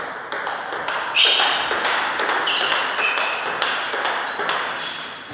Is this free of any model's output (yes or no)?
yes